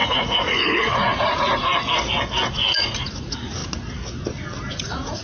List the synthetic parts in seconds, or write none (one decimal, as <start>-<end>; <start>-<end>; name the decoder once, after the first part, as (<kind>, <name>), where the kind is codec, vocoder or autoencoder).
0.0-1.7 (vocoder, Vocos); 2.5-3.6; 4.7-5.2